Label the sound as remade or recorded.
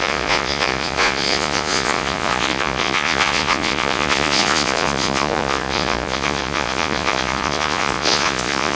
remade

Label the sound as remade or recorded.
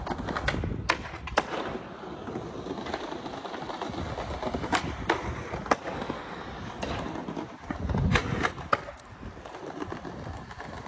recorded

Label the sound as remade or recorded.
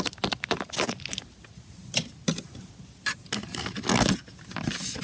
recorded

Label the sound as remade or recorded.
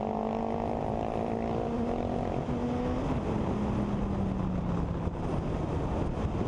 recorded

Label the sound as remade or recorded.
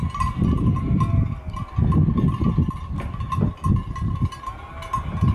recorded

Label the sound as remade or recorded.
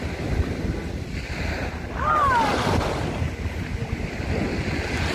recorded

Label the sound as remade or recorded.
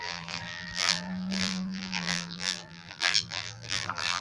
remade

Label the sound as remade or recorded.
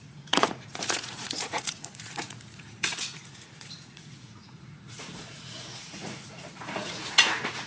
remade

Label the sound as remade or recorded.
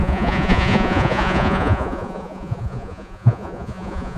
remade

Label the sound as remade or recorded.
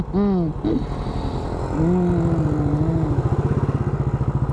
recorded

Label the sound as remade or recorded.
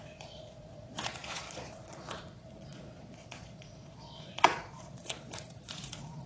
remade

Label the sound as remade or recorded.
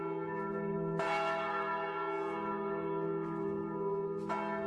recorded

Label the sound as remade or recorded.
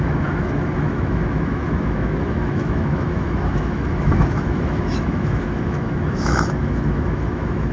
remade